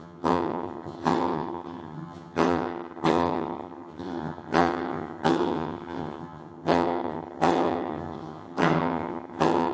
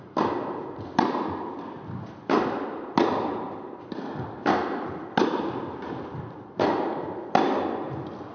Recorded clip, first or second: second